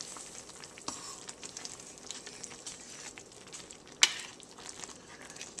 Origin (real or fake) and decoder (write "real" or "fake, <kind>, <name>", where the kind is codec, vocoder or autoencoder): real